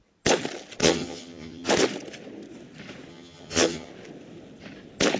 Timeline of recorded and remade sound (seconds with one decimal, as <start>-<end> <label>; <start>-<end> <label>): 0.0-0.8 recorded; 0.8-1.7 remade; 1.7-3.1 recorded; 3.1-3.9 remade; 3.9-5.2 recorded